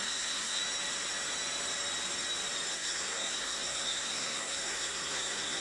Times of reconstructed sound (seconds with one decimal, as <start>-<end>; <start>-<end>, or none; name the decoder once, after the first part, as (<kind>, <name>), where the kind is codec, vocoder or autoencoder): 0.0-0.6 (codec, SNAC); 2.7-5.6